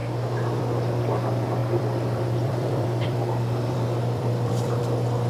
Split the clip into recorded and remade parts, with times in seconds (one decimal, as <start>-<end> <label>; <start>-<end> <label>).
0.0-1.6 recorded; 1.6-4.8 remade; 4.8-5.3 recorded

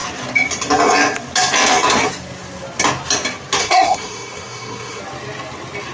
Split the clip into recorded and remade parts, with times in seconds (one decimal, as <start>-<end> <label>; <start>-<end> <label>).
0.0-3.6 recorded; 3.6-5.0 remade; 5.0-5.9 recorded